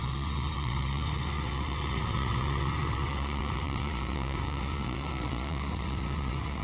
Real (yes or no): no